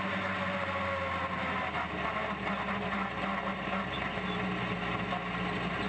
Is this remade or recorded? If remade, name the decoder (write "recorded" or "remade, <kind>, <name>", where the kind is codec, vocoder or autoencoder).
recorded